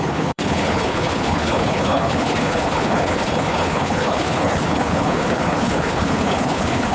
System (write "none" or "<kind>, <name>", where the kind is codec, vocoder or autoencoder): codec, HILCodec